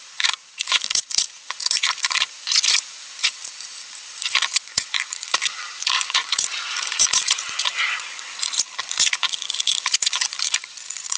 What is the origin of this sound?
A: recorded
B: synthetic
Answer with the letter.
B